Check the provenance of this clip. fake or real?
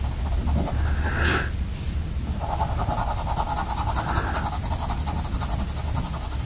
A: real